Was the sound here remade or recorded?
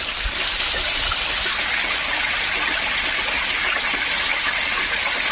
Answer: recorded